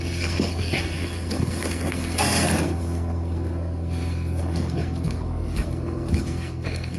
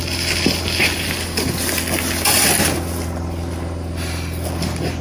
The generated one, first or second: first